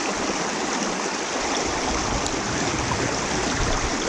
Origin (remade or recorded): recorded